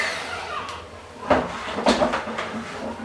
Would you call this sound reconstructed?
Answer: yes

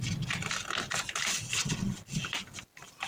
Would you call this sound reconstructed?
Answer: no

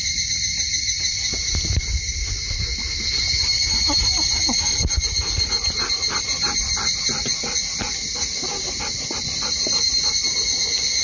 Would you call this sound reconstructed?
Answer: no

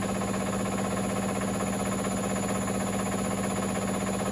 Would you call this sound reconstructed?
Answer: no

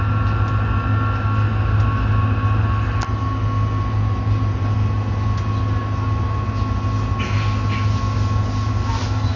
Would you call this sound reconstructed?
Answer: no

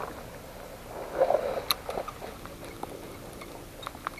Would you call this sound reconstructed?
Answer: no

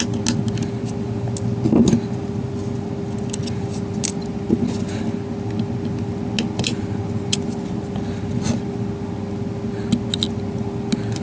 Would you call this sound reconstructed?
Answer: no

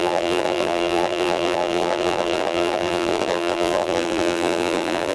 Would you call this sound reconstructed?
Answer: yes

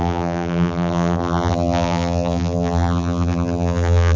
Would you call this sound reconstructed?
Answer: yes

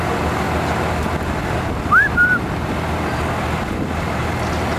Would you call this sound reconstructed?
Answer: no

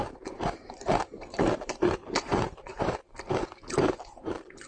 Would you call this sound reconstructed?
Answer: yes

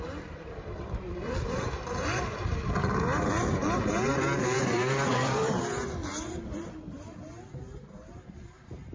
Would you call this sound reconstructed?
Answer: yes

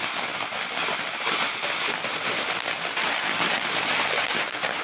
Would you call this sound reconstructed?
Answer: yes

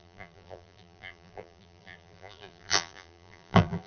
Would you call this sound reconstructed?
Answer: yes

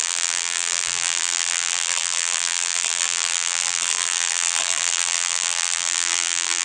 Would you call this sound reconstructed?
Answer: yes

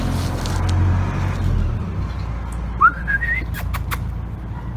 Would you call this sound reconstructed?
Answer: no